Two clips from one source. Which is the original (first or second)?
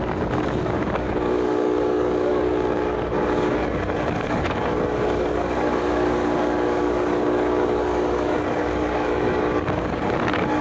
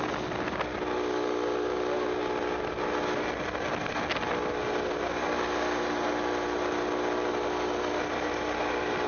second